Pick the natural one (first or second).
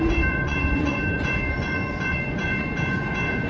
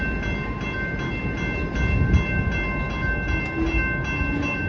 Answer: second